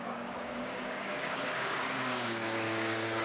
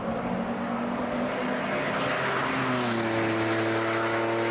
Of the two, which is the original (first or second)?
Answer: second